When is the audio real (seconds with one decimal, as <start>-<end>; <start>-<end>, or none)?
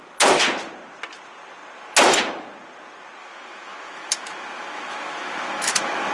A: 0.0-3.2